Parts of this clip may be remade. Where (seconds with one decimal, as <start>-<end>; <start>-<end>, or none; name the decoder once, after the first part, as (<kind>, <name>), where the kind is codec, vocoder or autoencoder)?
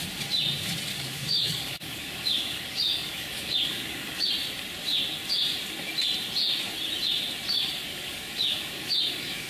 0.9-4.3 (codec, DAC); 7.9-9.5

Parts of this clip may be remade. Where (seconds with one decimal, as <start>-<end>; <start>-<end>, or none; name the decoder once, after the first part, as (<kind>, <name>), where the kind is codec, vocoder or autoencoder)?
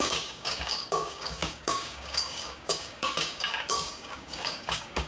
0.0-5.1 (codec, DAC)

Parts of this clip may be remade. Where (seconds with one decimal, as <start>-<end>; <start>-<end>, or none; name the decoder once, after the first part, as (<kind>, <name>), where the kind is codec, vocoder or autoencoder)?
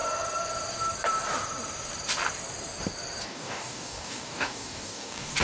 3.2-5.4 (codec, DAC)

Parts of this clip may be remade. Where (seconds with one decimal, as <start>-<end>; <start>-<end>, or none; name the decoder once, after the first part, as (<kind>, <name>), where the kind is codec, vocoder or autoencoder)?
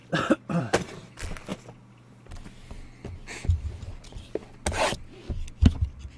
none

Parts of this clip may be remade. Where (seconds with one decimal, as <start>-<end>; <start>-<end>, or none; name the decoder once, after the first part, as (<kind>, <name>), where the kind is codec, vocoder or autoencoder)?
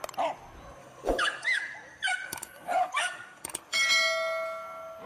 0.8-3.9 (codec, DAC)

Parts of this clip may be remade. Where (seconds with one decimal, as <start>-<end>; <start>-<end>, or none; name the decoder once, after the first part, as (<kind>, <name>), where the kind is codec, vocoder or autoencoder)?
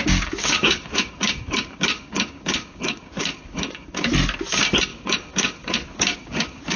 0.0-4.1 (codec, DAC); 4.9-6.8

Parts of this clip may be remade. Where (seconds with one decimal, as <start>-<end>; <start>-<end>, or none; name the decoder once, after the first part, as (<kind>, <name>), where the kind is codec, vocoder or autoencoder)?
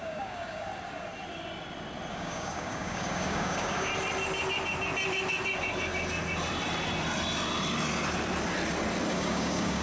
0.0-0.7 (codec, DAC); 2.1-3.9; 9.1-9.8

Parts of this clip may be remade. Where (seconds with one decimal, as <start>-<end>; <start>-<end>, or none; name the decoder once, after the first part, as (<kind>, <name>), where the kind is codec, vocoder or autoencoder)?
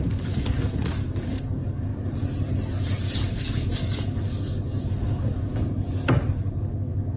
0.0-1.9 (codec, DAC); 3.0-5.5; 6.3-7.2